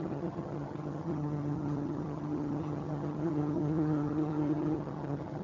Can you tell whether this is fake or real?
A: fake